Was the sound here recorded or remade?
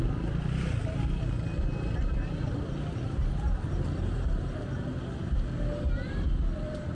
recorded